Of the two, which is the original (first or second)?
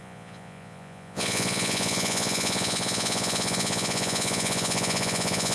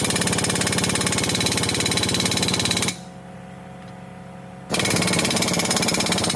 second